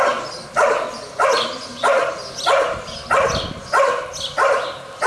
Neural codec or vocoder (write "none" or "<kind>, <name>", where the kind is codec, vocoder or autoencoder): none